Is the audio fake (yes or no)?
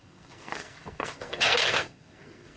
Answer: yes